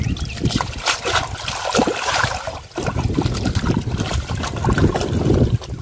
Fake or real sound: real